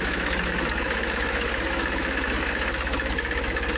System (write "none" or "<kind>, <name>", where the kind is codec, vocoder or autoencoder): autoencoder, DAC-VAE